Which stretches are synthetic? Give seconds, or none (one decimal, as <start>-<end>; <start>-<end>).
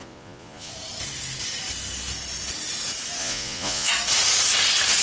0.0-0.7; 3.2-3.9